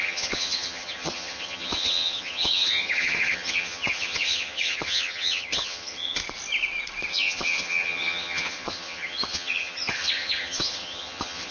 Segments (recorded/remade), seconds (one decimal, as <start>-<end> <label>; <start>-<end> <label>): 0.0-6.2 remade; 6.2-7.1 recorded; 7.1-11.5 remade